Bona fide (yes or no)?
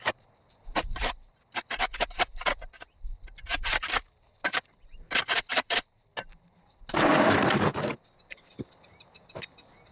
yes